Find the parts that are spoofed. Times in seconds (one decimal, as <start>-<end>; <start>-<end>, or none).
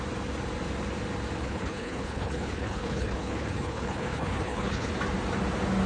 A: 1.4-4.9